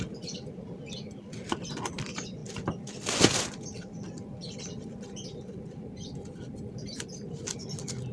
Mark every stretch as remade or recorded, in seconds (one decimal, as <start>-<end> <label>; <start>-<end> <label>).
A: 0.0-8.1 recorded